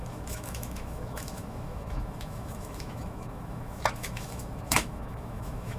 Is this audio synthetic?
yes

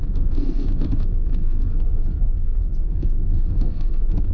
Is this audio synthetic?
yes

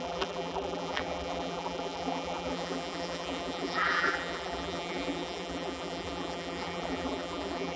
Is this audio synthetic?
yes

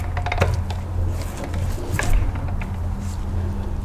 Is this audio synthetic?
no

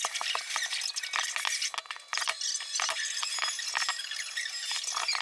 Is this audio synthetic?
no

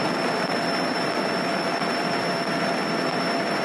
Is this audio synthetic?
yes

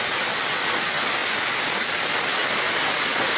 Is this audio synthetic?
no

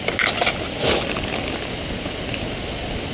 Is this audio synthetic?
no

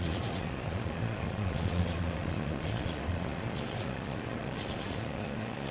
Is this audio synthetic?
yes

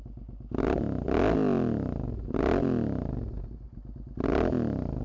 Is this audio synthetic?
no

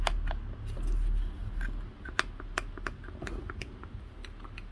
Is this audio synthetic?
no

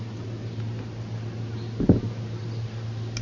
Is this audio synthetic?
no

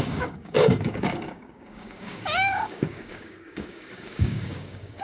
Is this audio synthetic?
yes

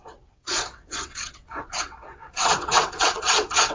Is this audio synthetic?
yes